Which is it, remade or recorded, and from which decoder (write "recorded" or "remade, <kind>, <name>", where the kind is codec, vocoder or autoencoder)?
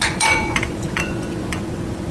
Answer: remade, vocoder, Vocos